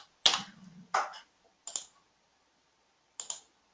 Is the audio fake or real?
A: real